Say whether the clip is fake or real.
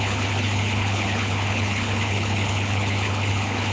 fake